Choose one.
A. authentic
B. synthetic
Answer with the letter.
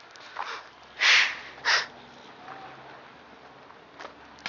A